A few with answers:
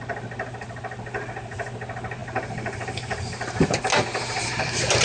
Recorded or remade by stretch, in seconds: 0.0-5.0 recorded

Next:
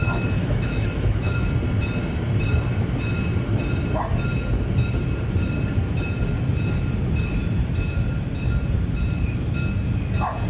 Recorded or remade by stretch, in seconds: 0.0-1.5 remade; 1.5-10.5 recorded

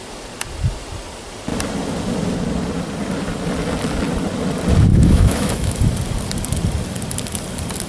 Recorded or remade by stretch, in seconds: 0.0-4.9 recorded; 4.9-5.8 remade; 5.8-7.9 recorded